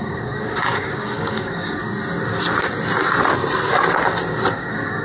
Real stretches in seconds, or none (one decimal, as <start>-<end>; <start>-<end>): 1.8-4.5